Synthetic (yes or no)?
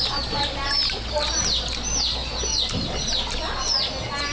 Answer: no